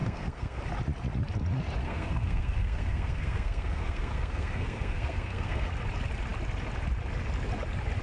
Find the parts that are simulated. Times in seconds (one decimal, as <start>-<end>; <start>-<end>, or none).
0.0-0.6; 1.8-5.7